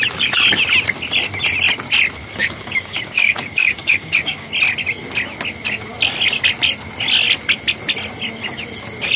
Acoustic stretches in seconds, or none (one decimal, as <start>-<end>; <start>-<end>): 0.0-2.2; 4.5-9.2